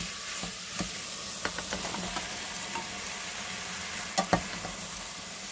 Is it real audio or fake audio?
real